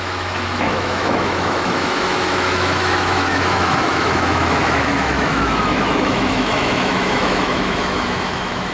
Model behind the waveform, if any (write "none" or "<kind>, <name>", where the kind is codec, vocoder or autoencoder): autoencoder, DAC-VAE